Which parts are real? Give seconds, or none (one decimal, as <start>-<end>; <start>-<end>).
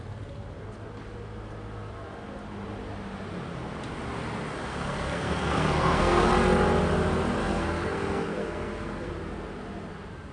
0.0-4.7; 6.3-7.4; 9.1-10.3